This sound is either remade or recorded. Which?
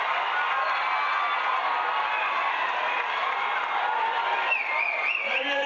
recorded